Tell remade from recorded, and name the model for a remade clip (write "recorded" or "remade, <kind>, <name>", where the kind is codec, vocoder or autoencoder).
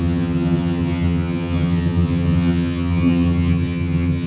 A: remade, vocoder, HiFi-GAN